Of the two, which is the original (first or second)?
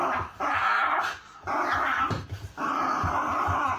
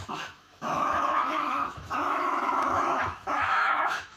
first